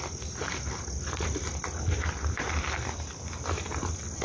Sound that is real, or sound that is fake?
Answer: real